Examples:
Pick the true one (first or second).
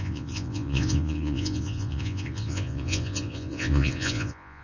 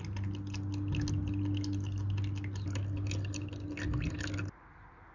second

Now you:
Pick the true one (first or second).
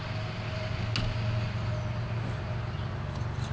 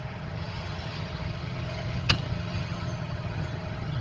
first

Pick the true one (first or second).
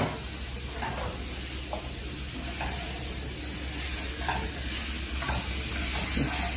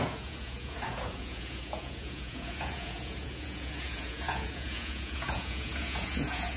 first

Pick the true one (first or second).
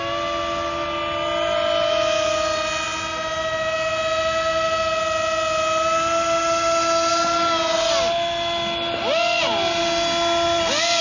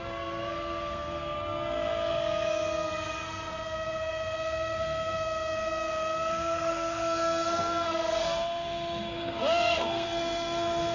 first